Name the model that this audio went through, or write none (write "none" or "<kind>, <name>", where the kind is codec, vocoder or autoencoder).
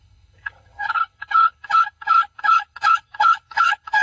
codec, HILCodec